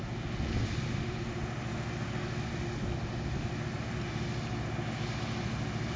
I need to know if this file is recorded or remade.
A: recorded